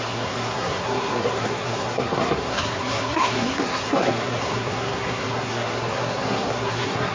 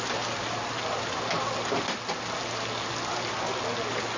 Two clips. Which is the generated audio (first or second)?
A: first